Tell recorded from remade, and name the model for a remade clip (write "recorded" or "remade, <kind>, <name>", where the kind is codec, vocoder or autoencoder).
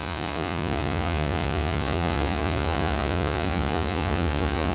remade, vocoder, Vocos